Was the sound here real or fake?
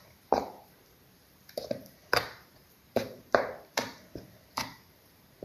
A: fake